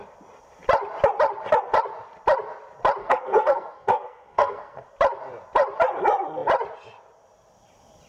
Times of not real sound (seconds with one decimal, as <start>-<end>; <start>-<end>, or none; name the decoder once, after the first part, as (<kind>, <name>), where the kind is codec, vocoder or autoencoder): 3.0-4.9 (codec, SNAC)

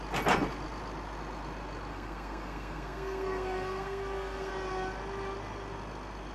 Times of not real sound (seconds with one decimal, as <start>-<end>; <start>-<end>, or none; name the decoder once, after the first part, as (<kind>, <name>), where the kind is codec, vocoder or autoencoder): 1.9-4.5 (codec, SNAC)

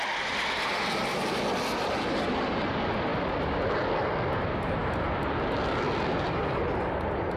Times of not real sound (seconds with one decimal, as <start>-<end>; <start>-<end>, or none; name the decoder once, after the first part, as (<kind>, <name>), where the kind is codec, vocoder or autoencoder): none

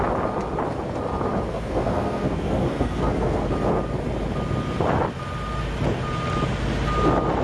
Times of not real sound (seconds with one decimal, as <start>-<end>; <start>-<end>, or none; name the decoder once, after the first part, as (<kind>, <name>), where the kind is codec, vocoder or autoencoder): 1.5-3.5 (codec, SNAC)

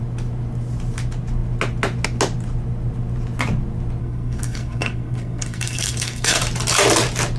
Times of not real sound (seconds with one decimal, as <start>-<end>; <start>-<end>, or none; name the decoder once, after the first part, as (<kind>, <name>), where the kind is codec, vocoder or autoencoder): 4.0-6.4 (codec, SNAC)